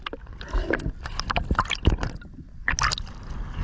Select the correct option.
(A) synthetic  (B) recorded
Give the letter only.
B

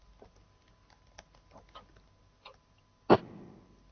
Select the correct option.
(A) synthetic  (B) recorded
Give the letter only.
B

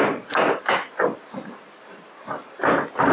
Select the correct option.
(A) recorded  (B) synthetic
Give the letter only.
A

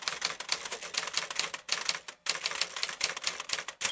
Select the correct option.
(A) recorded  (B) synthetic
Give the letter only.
A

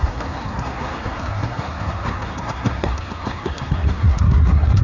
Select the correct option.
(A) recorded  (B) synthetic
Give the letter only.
B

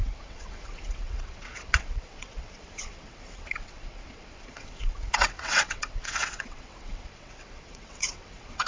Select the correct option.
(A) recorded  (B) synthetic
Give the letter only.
B